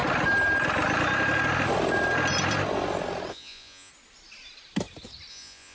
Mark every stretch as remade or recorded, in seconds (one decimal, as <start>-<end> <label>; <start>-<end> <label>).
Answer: 0.0-3.3 recorded; 3.3-3.9 remade; 3.9-5.3 recorded; 5.3-5.7 remade